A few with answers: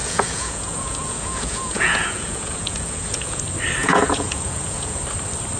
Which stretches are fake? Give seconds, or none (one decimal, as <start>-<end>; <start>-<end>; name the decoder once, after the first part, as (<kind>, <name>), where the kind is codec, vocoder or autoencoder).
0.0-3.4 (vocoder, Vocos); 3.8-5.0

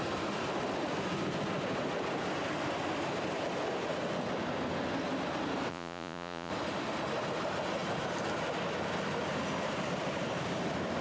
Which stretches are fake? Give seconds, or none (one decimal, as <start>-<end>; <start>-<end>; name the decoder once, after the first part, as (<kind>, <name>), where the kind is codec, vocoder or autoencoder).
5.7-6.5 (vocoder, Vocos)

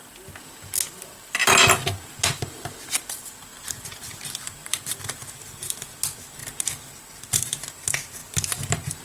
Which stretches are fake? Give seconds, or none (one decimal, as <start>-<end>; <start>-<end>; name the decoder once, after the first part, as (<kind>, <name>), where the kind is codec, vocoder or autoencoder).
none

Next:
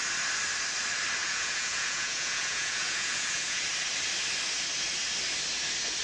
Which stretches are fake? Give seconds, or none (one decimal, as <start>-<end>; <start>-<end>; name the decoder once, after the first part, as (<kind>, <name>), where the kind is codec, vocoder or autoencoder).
1.2-3.6 (vocoder, Vocos)

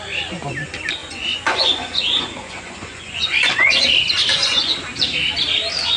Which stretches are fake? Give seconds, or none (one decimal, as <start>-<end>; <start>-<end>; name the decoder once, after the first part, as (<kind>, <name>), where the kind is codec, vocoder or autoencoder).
1.0-3.9 (vocoder, Vocos); 4.3-4.8

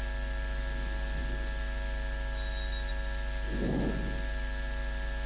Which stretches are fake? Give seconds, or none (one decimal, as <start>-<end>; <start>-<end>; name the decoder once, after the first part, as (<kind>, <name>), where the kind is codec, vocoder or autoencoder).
none